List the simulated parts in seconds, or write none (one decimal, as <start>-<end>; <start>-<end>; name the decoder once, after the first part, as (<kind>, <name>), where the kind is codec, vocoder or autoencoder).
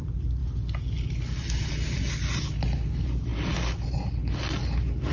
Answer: none